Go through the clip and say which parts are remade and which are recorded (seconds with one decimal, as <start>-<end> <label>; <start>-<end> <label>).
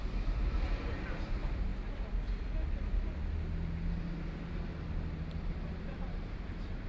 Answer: 0.0-1.7 remade; 1.7-5.8 recorded; 5.8-6.9 remade